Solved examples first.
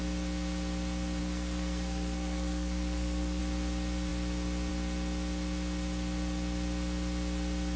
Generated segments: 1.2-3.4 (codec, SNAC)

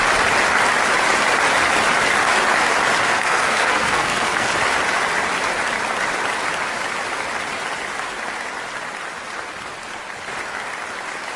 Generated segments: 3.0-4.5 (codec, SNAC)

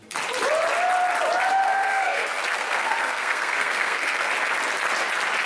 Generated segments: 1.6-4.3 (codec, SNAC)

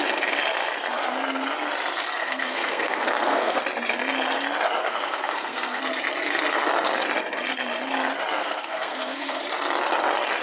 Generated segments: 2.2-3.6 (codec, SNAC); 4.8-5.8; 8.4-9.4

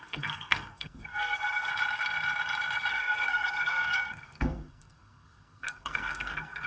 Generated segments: 0.0-1.7 (codec, SNAC); 2.9-6.7